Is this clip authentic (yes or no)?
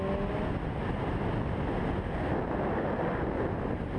yes